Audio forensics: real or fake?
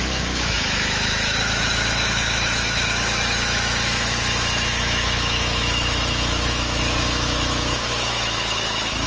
fake